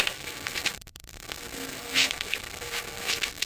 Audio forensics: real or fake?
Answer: fake